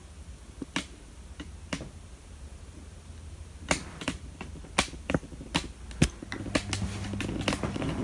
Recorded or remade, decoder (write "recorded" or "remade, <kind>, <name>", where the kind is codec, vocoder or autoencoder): recorded